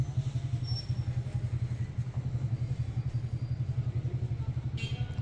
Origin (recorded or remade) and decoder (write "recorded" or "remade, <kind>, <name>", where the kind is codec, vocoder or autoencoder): recorded